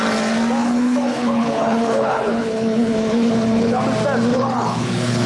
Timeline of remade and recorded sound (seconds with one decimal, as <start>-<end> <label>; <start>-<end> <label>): 0.0-0.6 recorded; 0.6-3.8 remade; 3.8-4.3 recorded; 4.3-5.3 remade